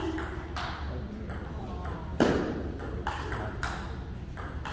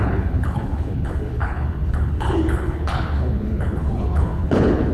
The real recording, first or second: first